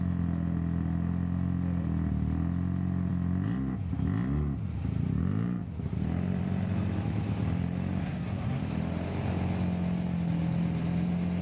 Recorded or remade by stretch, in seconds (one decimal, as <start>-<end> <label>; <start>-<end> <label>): 0.0-8.0 recorded; 8.0-8.6 remade; 8.6-11.4 recorded